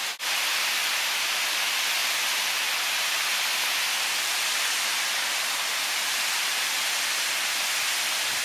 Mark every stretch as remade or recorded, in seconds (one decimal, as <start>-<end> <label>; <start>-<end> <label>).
0.0-8.4 recorded